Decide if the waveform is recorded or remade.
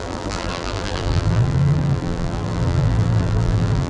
remade